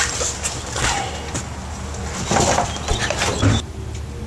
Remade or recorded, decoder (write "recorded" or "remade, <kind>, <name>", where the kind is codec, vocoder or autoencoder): recorded